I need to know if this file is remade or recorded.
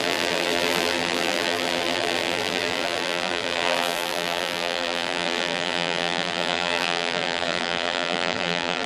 remade